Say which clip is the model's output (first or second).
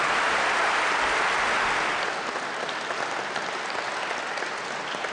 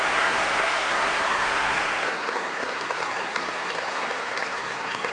second